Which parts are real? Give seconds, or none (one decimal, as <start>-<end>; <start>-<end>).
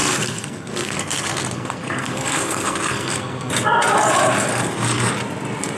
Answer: 3.5-4.5; 5.1-5.8